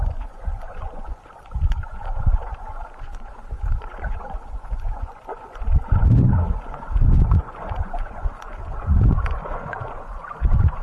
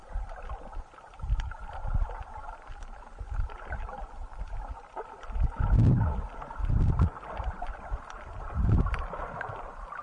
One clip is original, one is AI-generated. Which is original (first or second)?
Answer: second